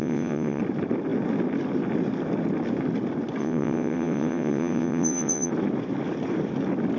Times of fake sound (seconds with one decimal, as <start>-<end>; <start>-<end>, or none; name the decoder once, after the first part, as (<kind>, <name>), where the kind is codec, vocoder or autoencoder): 0.0-0.6 (vocoder, WaveNeXt); 3.4-5.5